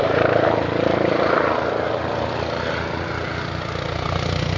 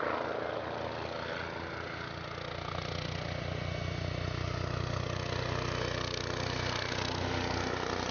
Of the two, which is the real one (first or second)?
second